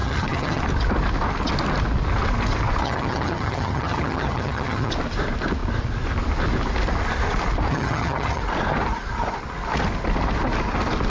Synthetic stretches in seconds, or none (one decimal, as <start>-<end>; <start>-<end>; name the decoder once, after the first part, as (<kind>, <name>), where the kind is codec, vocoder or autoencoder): 0.0-0.6 (vocoder, HiFi-GAN); 2.8-4.9; 7.7-8.4